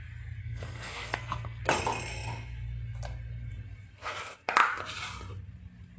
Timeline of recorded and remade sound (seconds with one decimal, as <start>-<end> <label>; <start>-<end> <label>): 0.0-0.4 recorded; 0.4-1.6 remade; 1.6-6.0 recorded